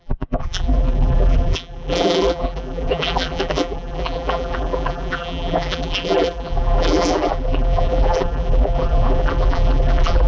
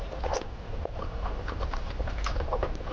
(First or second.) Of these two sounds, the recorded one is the second